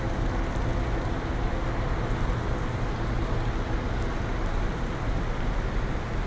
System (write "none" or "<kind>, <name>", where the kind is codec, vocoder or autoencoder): none